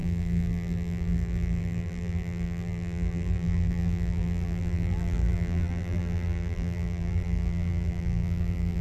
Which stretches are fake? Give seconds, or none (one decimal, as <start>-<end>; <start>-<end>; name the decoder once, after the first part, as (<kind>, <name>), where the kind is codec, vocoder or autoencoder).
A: 0.0-8.8 (vocoder, BigVGAN v2)